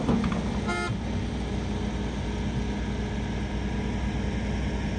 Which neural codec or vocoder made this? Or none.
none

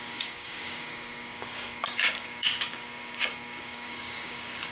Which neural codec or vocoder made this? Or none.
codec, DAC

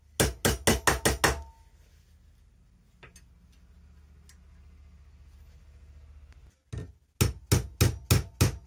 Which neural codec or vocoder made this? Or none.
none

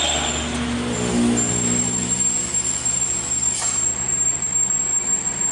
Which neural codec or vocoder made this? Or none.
none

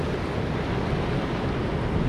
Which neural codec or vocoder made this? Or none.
none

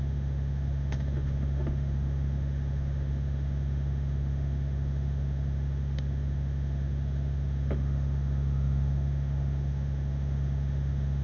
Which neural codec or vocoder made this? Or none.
autoencoder, DAC-VAE